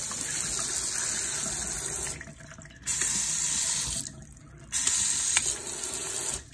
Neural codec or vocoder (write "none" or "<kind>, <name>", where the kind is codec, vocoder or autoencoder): none